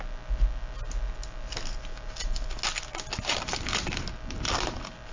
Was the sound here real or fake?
real